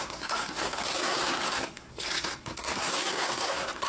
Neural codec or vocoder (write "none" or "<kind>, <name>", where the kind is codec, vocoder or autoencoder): codec, SNAC